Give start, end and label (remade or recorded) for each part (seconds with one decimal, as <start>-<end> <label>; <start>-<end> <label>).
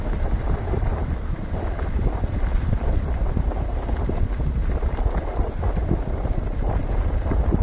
0.0-7.6 recorded